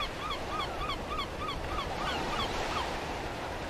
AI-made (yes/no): yes